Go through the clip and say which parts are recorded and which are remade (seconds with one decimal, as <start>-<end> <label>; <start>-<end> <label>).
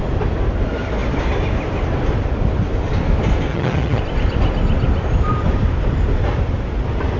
0.0-3.5 recorded; 3.5-4.0 remade; 4.0-7.2 recorded